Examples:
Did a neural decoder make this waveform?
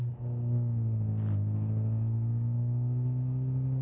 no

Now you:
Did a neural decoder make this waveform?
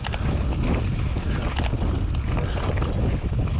no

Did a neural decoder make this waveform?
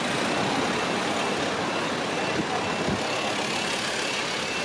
no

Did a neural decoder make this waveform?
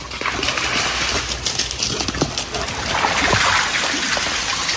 no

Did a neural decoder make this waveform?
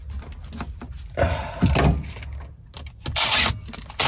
no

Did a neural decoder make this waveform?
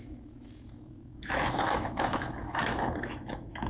yes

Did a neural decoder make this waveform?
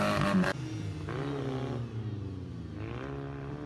no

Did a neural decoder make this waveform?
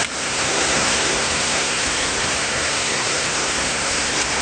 yes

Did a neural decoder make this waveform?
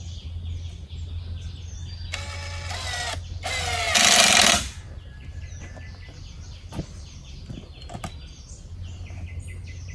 no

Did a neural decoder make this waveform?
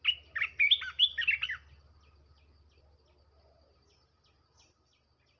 no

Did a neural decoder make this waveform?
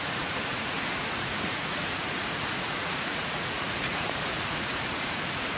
yes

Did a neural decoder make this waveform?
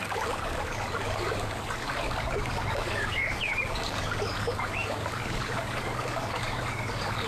yes